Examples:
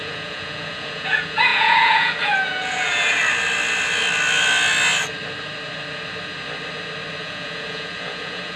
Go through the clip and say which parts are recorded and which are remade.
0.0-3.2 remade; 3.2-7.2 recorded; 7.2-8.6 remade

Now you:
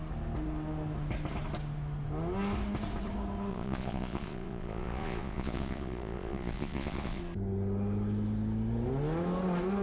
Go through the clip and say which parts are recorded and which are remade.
0.0-3.5 recorded; 3.5-7.2 remade; 7.2-9.8 recorded

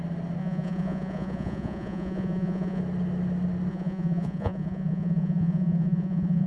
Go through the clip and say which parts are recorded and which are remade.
0.0-0.4 recorded; 0.4-2.8 remade; 2.8-3.7 recorded; 3.7-6.5 remade

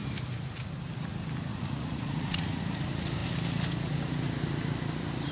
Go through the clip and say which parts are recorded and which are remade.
0.0-1.5 recorded; 1.5-2.6 remade; 2.6-5.3 recorded

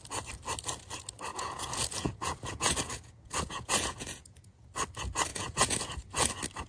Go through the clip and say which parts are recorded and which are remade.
0.0-1.3 recorded; 1.3-4.7 remade; 4.7-5.3 recorded; 5.3-6.3 remade; 6.3-6.7 recorded

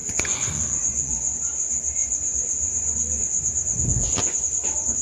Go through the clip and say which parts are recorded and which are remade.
0.0-1.4 remade; 1.4-2.0 recorded; 2.0-4.4 remade; 4.4-5.0 recorded

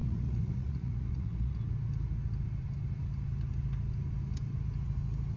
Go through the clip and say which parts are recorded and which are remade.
0.0-1.6 remade; 1.6-5.4 recorded